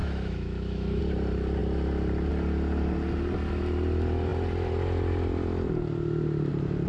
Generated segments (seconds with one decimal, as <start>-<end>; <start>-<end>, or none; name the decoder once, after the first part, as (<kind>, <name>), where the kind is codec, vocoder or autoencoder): 0.0-1.0 (autoencoder, DAC-VAE)